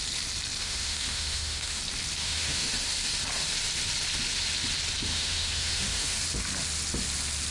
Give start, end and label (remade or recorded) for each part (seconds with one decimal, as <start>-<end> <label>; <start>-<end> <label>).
0.0-0.6 recorded; 0.6-1.8 remade; 1.8-2.2 recorded; 2.2-2.7 remade; 2.7-5.1 recorded; 5.1-6.2 remade; 6.2-7.5 recorded